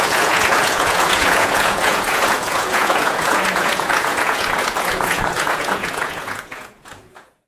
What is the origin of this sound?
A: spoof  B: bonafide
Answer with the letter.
A